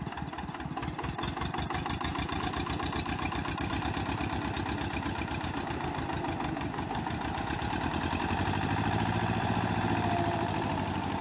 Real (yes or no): no